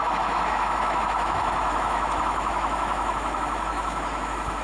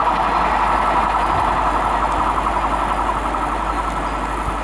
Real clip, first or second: second